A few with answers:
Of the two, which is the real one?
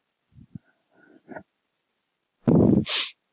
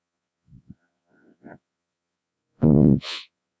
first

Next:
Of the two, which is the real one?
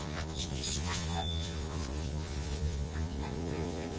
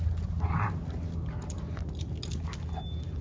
second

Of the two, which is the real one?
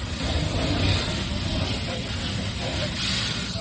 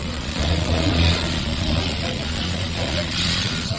first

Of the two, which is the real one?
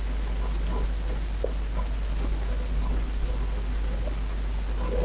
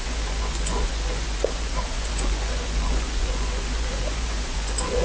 first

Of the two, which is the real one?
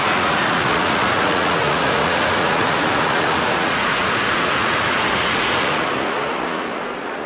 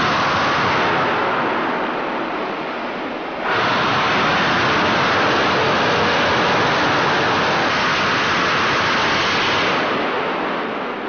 second